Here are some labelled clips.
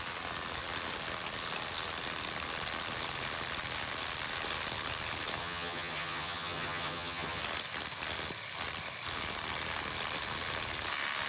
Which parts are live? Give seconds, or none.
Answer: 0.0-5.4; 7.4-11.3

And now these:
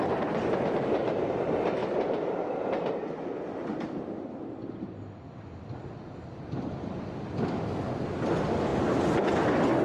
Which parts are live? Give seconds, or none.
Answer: 0.0-9.8

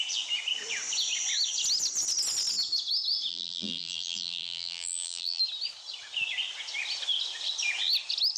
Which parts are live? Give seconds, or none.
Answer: 0.0-3.3; 5.4-8.4

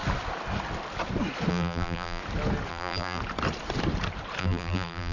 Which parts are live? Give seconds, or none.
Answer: 0.0-1.5; 2.2-2.7; 3.2-4.4